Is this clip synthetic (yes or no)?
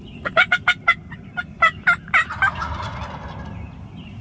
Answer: no